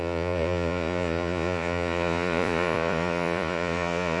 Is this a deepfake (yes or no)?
yes